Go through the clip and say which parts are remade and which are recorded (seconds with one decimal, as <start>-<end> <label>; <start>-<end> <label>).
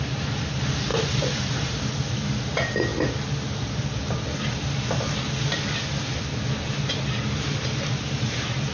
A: 0.0-2.9 remade; 2.9-7.9 recorded; 7.9-8.7 remade